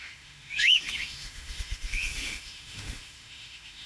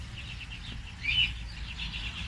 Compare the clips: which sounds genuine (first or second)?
second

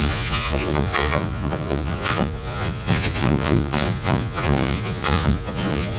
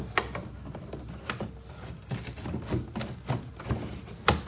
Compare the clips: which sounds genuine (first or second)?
second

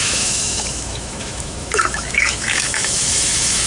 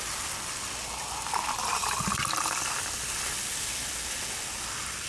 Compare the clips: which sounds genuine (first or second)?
second